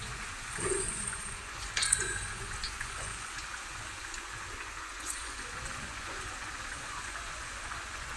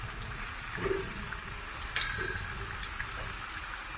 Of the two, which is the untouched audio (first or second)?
second